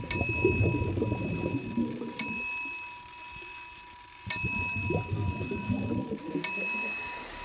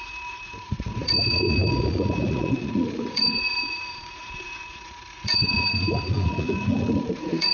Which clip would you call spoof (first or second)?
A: second